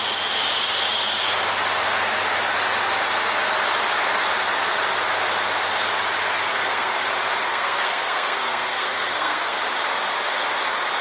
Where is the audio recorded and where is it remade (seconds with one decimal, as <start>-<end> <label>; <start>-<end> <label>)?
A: 0.0-6.5 recorded; 6.5-7.0 remade; 7.0-7.5 recorded; 7.5-9.6 remade; 9.6-11.0 recorded